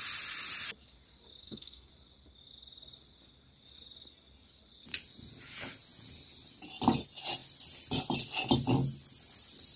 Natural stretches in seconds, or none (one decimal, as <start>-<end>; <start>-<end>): 0.0-1.4; 1.9-9.8